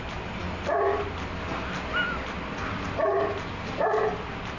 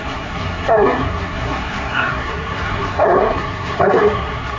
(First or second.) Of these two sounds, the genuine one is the first